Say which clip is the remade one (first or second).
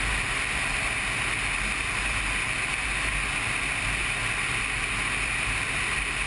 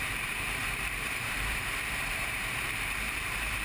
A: second